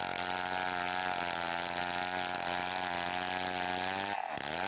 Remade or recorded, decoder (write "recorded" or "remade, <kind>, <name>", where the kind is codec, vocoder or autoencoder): recorded